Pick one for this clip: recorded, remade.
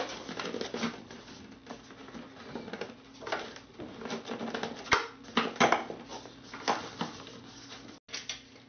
recorded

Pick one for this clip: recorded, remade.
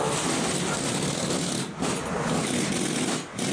recorded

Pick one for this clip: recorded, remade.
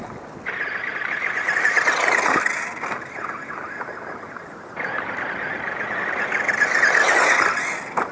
recorded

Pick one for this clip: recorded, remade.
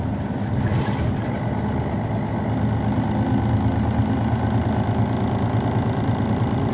recorded